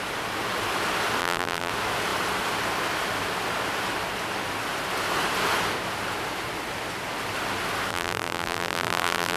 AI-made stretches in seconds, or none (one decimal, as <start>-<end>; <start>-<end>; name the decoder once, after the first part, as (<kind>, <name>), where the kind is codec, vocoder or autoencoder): 1.2-1.7 (vocoder, BigVGAN v2); 7.9-9.4